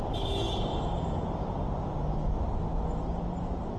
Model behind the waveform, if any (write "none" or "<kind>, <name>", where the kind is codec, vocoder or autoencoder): none